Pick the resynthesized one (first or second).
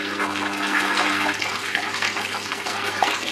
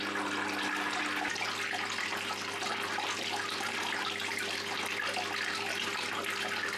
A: first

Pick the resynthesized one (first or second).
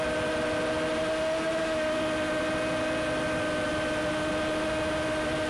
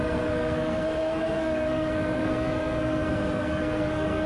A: second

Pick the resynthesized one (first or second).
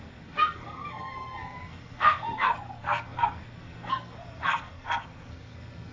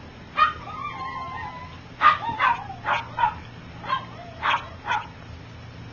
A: first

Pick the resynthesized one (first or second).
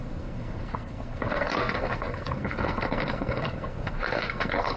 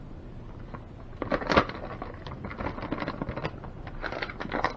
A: first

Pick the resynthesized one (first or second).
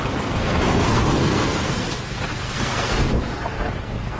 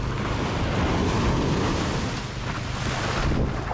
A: first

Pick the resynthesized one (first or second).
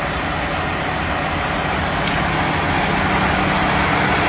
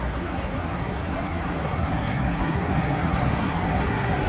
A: second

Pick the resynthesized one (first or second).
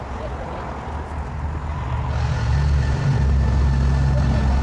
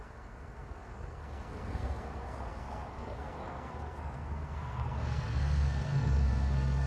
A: second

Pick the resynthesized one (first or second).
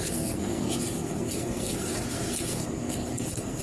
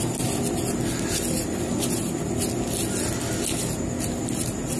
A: first